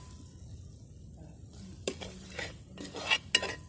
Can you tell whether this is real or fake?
real